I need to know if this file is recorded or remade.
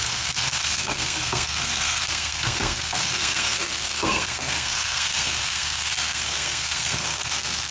remade